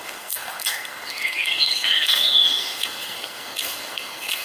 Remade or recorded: remade